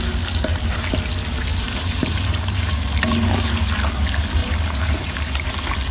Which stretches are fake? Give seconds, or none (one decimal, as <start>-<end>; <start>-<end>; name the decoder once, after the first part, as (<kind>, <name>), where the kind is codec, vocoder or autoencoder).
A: 0.5-1.0 (vocoder, BigVGAN v2); 1.5-2.8; 4.4-5.5